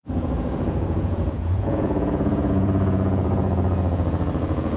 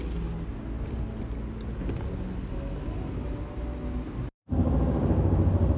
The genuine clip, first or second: second